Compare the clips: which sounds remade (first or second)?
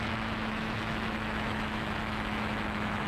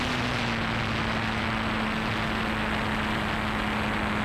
first